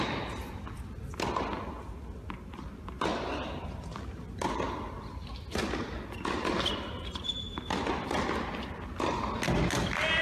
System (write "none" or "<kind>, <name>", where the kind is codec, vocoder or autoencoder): none